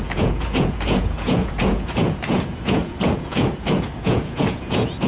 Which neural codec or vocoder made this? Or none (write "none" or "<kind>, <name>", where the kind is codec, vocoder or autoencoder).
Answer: vocoder, Vocos